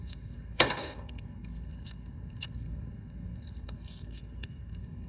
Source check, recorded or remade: remade